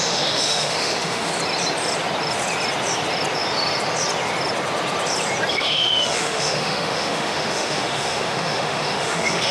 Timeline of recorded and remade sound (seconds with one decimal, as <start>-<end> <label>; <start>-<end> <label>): 0.0-1.3 remade; 1.3-5.5 recorded; 5.5-9.5 remade